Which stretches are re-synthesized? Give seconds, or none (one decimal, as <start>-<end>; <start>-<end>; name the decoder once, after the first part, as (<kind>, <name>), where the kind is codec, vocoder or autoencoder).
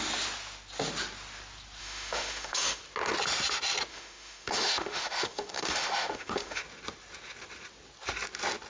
1.8-2.8 (autoencoder, DAC-VAE); 3.9-6.6